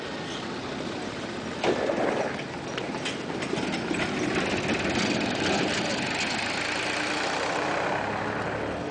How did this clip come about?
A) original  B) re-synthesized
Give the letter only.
A